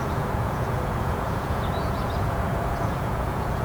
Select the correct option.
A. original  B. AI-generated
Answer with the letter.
B